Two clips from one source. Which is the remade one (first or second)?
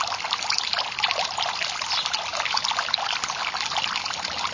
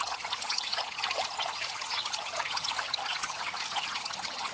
second